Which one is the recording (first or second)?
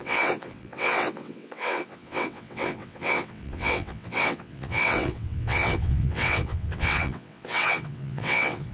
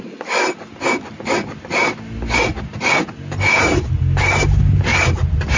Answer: second